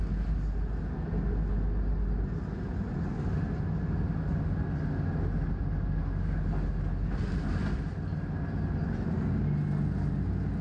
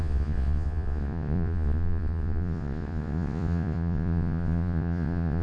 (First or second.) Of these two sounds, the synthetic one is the second